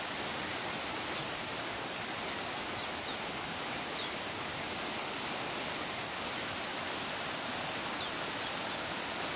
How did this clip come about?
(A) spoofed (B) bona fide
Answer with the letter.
B